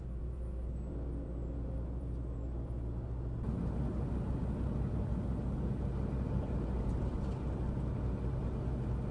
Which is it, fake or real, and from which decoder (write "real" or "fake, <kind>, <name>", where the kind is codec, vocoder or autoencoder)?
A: real